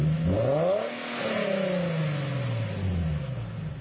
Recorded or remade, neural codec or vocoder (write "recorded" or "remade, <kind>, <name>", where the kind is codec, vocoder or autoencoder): recorded